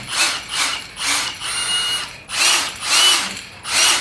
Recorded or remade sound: recorded